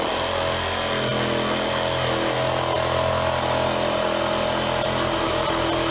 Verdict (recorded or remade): recorded